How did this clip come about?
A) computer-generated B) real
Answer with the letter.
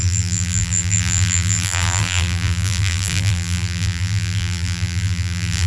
A